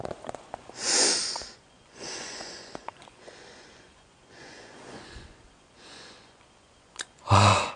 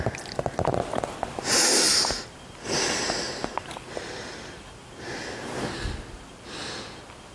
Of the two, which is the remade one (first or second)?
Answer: first